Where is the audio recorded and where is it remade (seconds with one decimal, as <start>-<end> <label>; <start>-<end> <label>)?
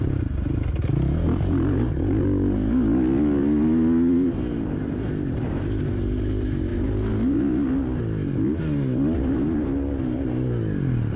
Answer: 0.0-11.2 recorded